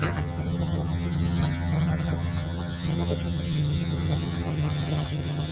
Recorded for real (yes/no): no